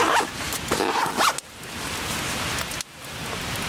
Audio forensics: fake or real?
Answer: real